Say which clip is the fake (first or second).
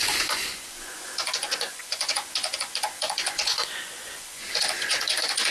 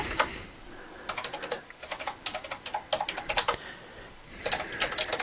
first